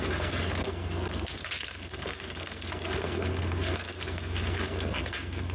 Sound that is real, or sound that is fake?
fake